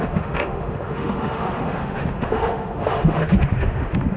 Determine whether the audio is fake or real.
fake